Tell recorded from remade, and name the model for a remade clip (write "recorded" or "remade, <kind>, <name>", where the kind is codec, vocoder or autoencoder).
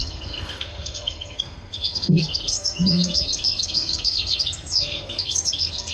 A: remade, codec, SNAC